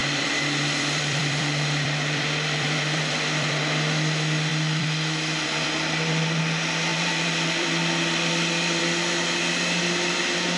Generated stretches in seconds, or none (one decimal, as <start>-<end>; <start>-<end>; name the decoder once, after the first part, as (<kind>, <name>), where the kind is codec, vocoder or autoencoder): 0.0-3.6 (vocoder, BigVGAN v2); 4.5-6.4; 6.9-8.8